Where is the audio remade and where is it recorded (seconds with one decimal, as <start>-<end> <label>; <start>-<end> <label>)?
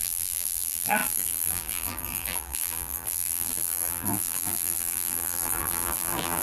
0.0-6.4 remade